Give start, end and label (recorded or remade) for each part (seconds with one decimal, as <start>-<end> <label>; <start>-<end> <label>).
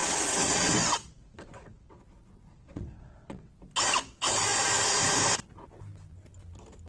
0.0-2.0 remade; 2.0-2.5 recorded; 2.5-3.5 remade; 3.5-6.9 recorded